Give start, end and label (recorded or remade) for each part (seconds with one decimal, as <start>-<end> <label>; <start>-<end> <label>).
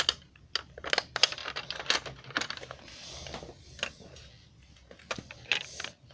0.0-6.1 recorded